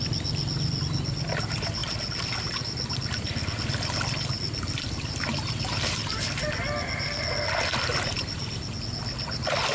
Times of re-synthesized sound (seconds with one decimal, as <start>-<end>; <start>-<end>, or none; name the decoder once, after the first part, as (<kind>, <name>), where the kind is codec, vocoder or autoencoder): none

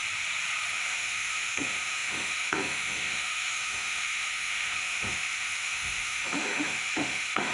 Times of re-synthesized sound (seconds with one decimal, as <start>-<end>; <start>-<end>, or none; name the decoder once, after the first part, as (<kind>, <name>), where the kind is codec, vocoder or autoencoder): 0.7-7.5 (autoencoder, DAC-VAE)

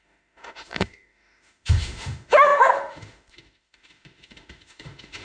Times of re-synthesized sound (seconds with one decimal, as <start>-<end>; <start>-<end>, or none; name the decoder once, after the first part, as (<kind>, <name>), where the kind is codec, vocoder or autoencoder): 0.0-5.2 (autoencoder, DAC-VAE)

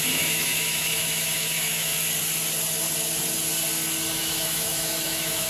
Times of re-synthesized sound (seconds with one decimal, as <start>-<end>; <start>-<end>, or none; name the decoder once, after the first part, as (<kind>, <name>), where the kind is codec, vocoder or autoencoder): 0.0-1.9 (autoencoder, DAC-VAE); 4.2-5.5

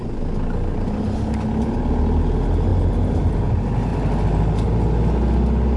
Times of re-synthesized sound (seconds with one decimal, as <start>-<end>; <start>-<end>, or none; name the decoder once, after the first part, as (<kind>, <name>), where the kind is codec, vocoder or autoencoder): none